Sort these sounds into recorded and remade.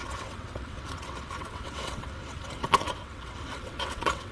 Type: remade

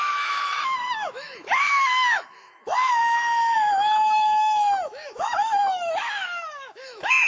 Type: remade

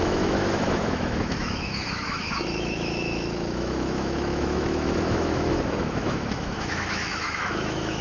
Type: remade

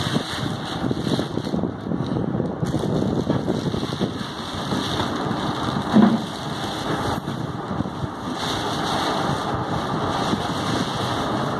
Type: recorded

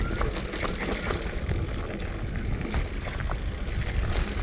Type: recorded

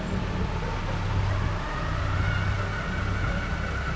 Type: recorded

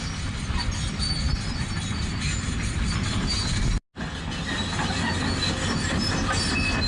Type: recorded